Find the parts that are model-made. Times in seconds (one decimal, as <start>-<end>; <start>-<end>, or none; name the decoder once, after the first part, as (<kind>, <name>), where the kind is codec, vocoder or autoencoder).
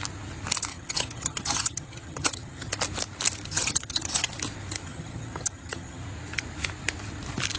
0.7-2.7 (vocoder, HiFi-GAN); 3.5-4.3; 4.8-6.0